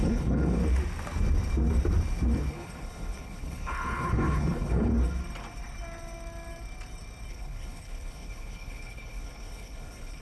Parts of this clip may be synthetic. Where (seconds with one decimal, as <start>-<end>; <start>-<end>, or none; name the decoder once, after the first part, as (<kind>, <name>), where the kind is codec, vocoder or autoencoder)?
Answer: 0.0-0.6 (codec, HILCodec); 2.5-4.9; 7.3-10.2